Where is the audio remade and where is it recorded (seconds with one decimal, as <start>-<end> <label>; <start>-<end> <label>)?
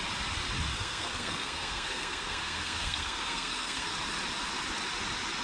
0.0-0.7 recorded; 0.7-3.9 remade; 3.9-5.4 recorded